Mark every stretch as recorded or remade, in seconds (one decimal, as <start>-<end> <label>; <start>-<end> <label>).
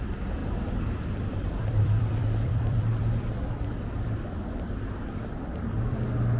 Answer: 0.0-0.4 recorded; 0.4-4.2 remade; 4.2-6.4 recorded